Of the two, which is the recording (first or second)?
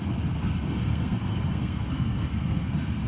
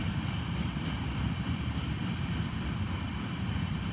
second